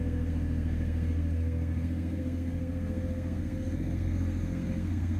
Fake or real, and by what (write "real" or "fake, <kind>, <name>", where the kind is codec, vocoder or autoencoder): fake, codec, SNAC